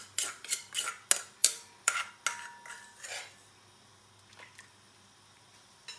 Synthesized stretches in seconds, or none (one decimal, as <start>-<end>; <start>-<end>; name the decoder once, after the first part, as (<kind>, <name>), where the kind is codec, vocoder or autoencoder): 0.0-0.6 (vocoder, BigVGAN v2); 1.4-2.1